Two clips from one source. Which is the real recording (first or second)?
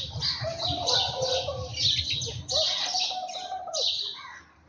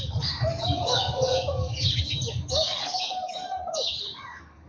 first